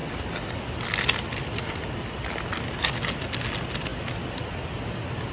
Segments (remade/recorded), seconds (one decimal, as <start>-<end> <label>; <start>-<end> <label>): 0.0-5.3 recorded

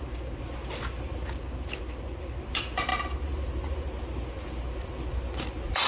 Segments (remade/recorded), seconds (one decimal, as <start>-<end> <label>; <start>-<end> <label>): 0.0-5.9 recorded

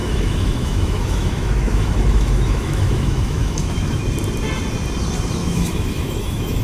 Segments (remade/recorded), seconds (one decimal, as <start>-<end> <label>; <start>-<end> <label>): 0.0-4.0 remade; 4.0-5.4 recorded; 5.4-6.6 remade